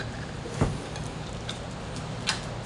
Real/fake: real